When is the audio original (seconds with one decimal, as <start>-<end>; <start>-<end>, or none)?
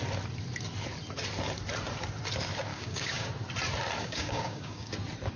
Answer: 0.0-2.7; 3.3-4.0; 4.9-5.4